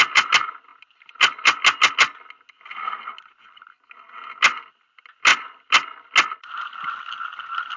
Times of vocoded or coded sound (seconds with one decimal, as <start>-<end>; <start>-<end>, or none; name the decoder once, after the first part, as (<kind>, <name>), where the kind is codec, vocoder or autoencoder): none